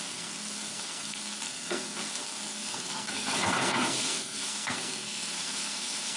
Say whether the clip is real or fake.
fake